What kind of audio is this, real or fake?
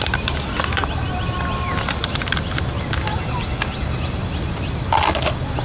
real